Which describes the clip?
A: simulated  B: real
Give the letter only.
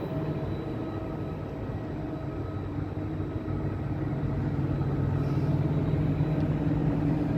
B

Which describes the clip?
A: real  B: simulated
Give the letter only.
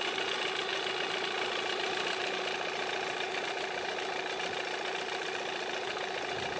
A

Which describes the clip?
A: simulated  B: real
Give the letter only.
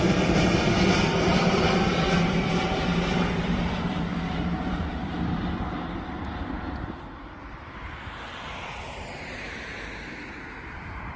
A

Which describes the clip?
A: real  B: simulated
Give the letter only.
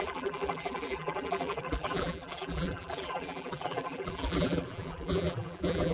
B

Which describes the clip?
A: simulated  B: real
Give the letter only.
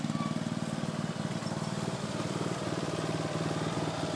A